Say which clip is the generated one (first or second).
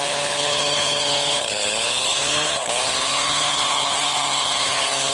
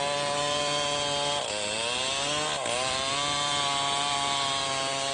first